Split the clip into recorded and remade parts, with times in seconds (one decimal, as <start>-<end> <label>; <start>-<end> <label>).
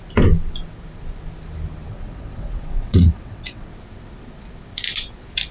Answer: 0.0-1.9 recorded; 1.9-3.7 remade; 3.7-5.5 recorded